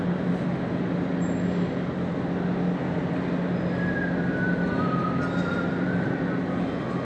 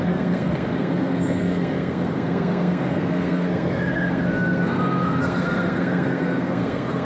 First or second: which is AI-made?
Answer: second